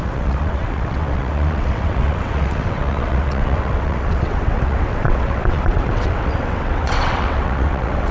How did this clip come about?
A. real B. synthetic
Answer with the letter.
B